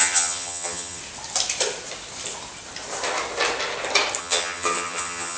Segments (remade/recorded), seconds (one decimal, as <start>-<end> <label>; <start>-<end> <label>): 0.0-1.0 remade; 1.0-4.2 recorded; 4.2-5.4 remade